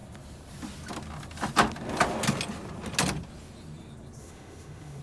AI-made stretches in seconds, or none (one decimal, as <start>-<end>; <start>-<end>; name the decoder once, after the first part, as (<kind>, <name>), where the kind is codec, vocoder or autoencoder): 4.2-5.0 (autoencoder, DAC-VAE)